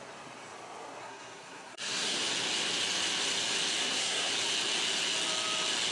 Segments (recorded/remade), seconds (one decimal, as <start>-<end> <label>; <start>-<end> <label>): 0.0-1.0 recorded; 1.0-2.2 remade; 2.2-3.8 recorded; 3.8-4.3 remade; 4.3-5.9 recorded